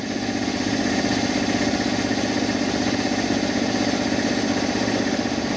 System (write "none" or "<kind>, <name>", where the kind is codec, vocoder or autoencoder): none